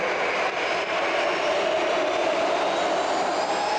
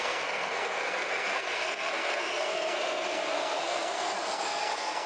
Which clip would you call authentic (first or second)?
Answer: first